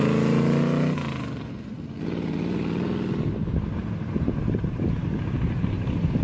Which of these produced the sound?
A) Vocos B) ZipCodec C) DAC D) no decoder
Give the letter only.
D